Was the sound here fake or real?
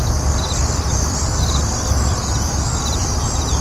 real